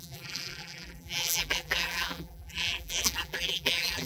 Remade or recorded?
remade